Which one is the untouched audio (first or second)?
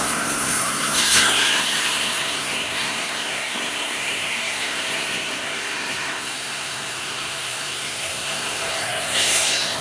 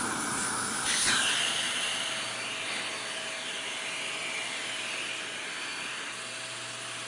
second